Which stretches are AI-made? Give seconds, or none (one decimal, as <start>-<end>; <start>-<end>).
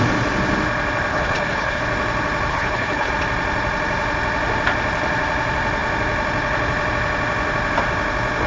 1.1-1.8; 2.5-3.1